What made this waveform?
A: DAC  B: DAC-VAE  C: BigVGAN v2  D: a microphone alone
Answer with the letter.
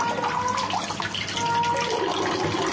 D